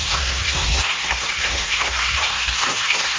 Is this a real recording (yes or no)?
no